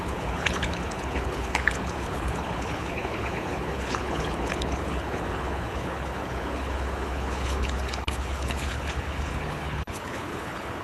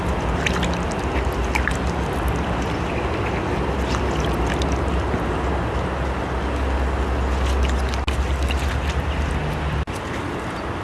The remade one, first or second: first